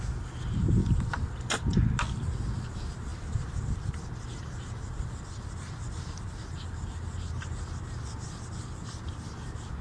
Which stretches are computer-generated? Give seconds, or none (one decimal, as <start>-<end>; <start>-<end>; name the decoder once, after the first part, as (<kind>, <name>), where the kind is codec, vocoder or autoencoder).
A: 0.8-1.8 (vocoder, BigVGAN v2); 3.1-6.7